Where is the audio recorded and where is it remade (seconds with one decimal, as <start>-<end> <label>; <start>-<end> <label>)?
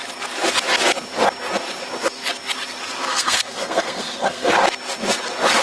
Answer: 0.0-3.1 recorded; 3.1-4.5 remade; 4.5-5.6 recorded